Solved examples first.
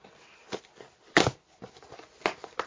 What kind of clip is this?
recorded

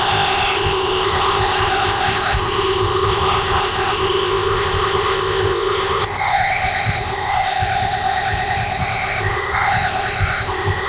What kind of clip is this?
remade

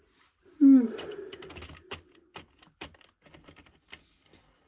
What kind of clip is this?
recorded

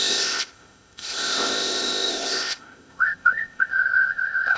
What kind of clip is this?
remade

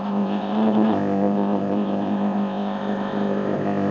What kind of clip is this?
remade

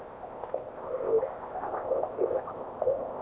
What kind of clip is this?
remade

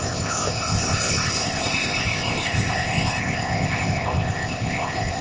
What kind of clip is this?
remade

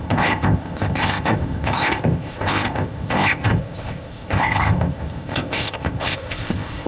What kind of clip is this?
remade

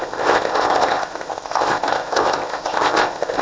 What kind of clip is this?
remade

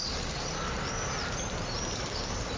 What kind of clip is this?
recorded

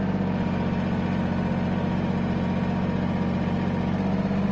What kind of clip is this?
recorded